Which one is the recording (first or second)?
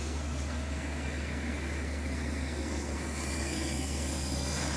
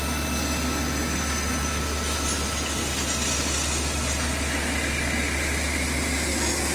second